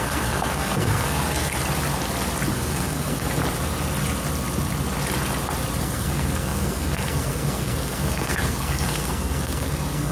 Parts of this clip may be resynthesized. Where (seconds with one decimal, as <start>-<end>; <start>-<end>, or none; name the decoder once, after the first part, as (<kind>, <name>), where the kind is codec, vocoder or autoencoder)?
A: 0.0-1.5 (codec, SNAC); 2.5-3.4; 5.8-10.1